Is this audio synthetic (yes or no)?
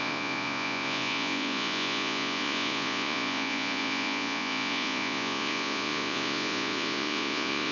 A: yes